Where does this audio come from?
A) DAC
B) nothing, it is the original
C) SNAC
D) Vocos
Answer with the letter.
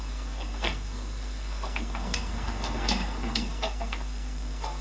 C